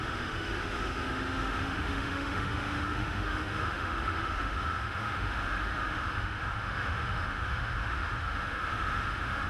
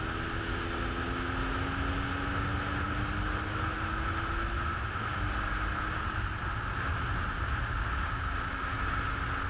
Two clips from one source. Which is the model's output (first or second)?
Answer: first